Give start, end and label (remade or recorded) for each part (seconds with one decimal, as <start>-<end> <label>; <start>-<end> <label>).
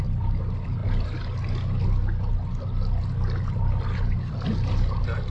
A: 0.0-0.8 remade; 0.8-3.5 recorded; 3.5-5.3 remade